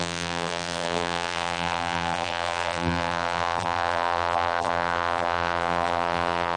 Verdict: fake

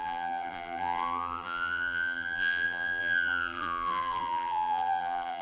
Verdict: fake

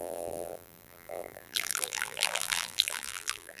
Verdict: fake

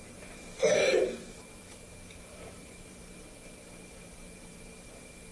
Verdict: fake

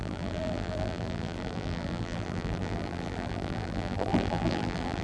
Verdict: fake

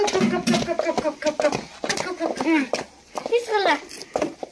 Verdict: real